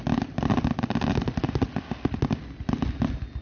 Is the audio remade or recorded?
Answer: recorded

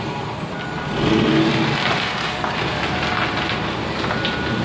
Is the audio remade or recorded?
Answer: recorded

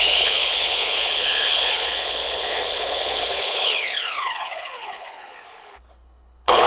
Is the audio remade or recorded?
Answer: remade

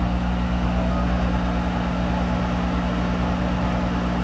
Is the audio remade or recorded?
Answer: recorded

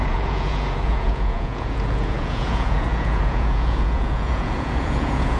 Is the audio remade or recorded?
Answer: remade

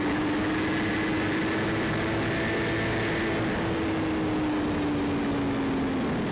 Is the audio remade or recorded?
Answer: recorded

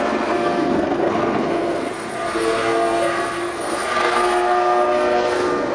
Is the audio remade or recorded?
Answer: remade